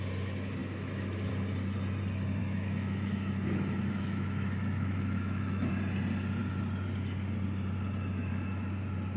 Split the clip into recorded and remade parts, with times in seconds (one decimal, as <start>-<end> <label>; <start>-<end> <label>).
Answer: 0.0-0.6 recorded; 0.6-1.3 remade; 1.3-2.4 recorded; 2.4-5.7 remade; 5.7-9.2 recorded